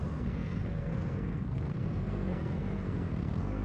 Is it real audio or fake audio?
fake